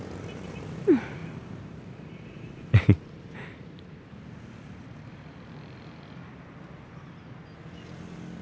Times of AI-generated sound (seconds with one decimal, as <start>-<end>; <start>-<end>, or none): 1.2-2.8